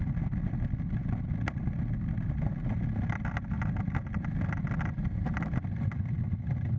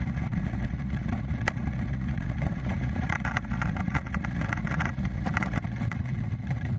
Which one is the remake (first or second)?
second